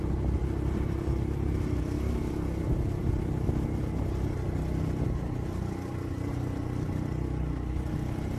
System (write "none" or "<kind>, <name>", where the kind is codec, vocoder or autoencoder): none